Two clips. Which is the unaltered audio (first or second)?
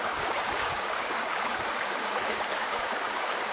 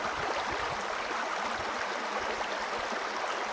second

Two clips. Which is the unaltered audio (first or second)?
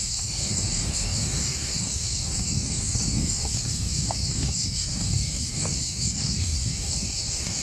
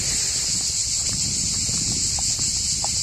second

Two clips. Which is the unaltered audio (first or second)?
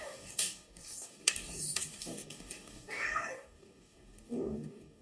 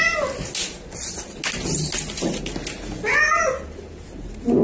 second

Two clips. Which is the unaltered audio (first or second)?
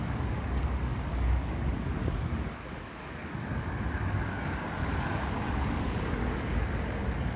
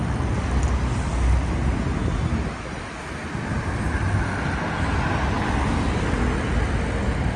second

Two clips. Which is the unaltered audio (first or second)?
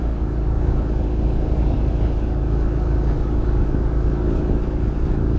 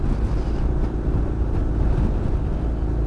second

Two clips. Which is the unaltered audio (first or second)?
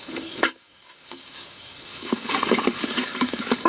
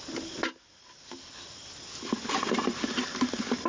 second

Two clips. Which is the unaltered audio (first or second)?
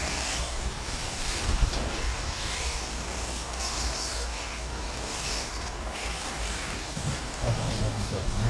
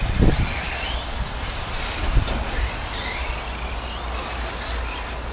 second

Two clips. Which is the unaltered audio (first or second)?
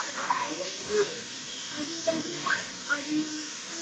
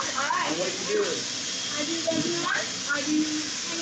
second